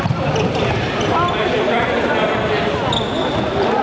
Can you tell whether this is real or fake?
real